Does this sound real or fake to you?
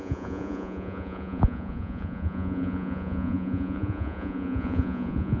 fake